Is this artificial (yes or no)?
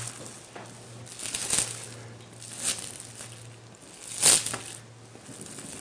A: no